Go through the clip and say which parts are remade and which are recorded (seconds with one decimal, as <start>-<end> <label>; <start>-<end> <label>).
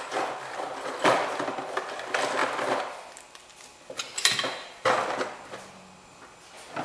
0.0-6.8 recorded